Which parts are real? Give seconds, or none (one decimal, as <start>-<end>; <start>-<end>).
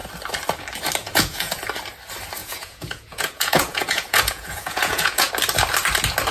0.0-1.0; 1.6-2.4; 5.3-6.3